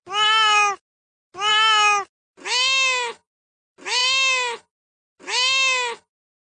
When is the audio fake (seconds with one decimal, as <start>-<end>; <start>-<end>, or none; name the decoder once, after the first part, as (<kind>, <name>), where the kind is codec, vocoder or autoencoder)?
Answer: none